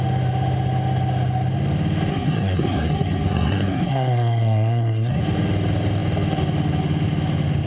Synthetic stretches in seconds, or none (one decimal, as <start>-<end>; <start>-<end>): 2.1-5.2